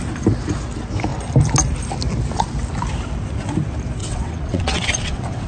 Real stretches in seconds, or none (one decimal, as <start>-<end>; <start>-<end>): 0.0-4.0